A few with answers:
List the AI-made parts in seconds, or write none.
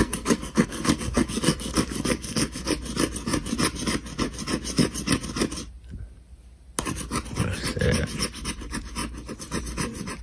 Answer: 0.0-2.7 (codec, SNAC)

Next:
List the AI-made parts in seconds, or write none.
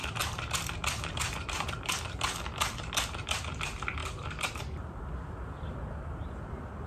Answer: none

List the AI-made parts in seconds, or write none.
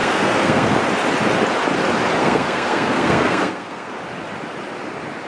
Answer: 0.0-0.8 (codec, SNAC); 2.2-3.9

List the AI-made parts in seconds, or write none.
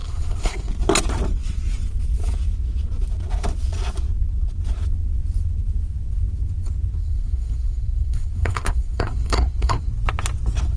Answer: 0.0-0.7 (codec, SNAC); 7.0-9.9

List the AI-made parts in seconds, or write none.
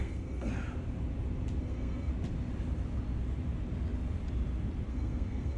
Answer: 0.0-0.5 (codec, SNAC); 1.6-2.1; 4.9-5.6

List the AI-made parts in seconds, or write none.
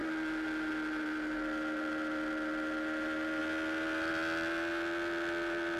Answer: none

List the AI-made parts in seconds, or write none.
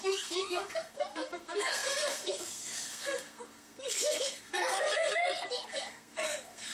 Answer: 0.0-6.7 (codec, SNAC)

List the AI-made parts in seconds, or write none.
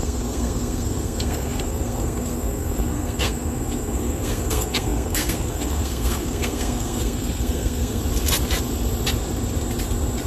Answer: 0.0-8.0 (codec, SNAC)